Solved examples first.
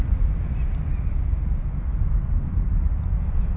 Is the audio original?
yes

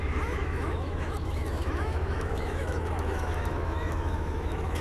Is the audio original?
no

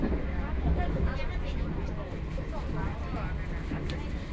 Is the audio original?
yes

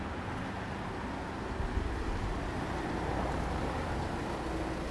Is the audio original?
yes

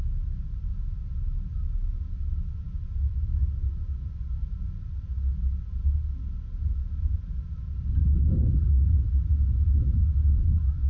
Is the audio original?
yes